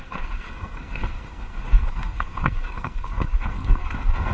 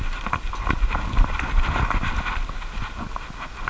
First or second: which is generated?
first